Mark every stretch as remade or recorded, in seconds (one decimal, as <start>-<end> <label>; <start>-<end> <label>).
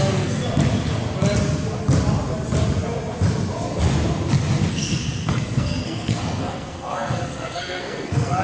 0.0-0.4 remade; 0.4-4.7 recorded; 4.7-8.4 remade